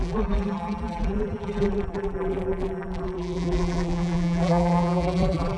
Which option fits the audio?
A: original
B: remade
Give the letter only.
B